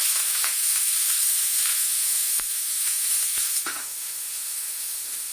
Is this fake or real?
fake